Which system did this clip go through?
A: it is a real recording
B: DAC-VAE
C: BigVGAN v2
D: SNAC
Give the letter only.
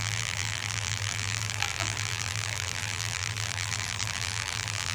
C